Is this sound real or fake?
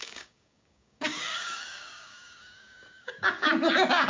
fake